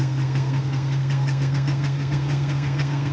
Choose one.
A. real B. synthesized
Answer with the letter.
B